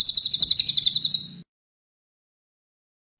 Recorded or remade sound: recorded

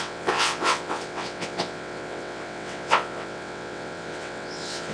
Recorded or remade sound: remade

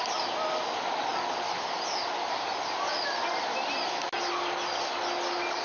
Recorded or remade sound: recorded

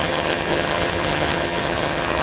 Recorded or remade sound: remade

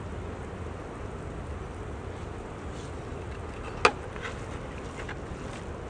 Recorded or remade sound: recorded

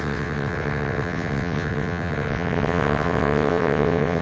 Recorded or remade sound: remade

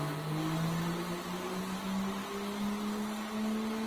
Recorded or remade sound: recorded